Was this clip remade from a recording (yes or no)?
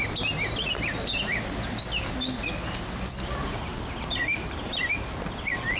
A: no